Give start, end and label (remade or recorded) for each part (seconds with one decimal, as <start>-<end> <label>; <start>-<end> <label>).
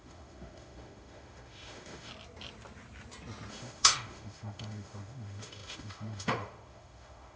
0.0-2.1 remade; 2.1-3.5 recorded; 3.5-7.4 remade